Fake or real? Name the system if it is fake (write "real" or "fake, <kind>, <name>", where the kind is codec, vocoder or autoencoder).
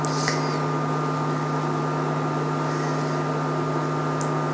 real